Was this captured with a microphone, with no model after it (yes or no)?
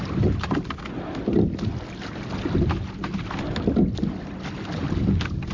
no